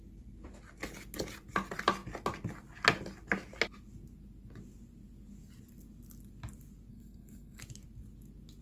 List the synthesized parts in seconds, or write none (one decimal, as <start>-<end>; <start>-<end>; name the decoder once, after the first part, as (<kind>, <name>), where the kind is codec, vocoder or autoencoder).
6.9-7.6 (codec, SNAC)